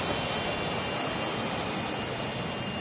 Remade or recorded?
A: recorded